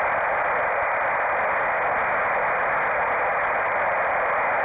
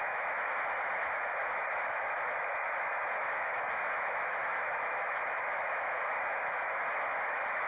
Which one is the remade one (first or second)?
second